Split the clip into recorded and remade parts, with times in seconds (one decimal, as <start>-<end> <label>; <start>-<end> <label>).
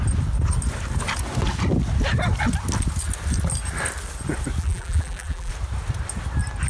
0.0-4.6 recorded; 4.6-5.5 remade; 5.5-6.7 recorded